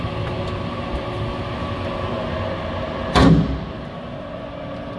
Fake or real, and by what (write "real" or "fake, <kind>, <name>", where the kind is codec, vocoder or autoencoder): real